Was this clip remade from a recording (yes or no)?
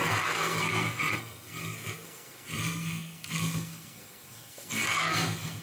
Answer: yes